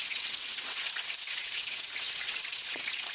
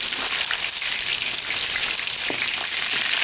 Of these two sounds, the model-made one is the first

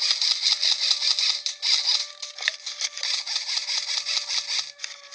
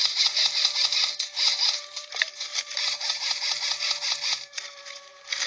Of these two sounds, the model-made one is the second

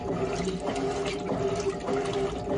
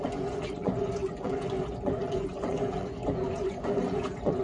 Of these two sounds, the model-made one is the second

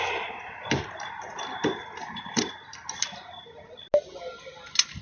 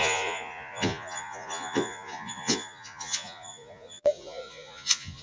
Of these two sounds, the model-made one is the second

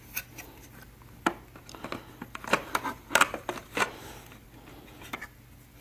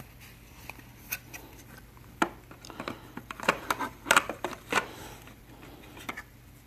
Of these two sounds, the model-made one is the second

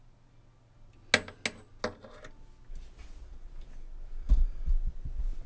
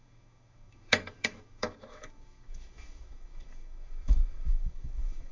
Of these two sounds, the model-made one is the second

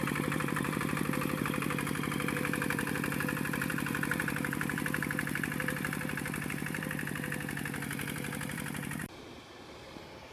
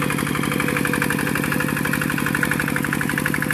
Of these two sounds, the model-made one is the first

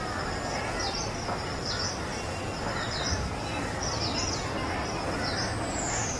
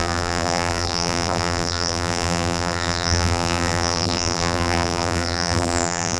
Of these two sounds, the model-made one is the second